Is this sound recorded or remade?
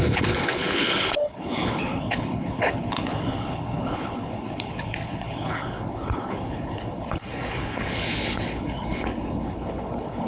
remade